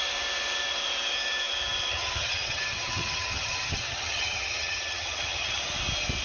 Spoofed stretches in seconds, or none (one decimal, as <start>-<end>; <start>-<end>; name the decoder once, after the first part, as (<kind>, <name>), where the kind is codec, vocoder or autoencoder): 1.9-5.6 (vocoder, HiFi-GAN)